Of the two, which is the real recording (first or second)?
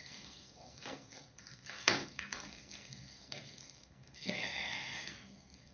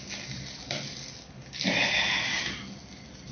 second